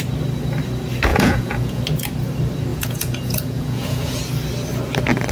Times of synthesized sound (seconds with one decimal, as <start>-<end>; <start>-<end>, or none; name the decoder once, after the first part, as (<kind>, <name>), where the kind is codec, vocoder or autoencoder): 1.1-1.8 (vocoder, Vocos); 2.7-4.2